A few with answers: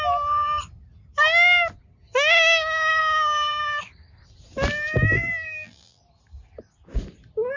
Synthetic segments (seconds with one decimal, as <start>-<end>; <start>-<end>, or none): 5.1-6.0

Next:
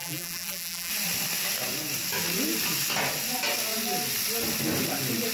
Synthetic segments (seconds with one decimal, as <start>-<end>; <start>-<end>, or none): 0.0-0.9

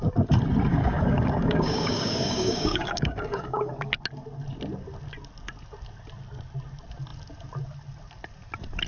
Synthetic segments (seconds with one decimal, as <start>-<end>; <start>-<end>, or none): 0.7-3.7

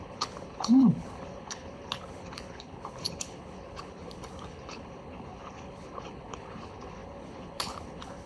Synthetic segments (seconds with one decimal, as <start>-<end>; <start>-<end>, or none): 0.0-8.3